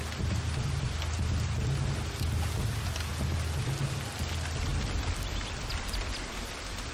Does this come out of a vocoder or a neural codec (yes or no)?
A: no